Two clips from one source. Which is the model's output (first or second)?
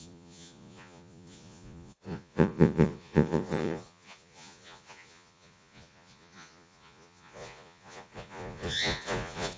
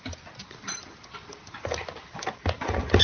first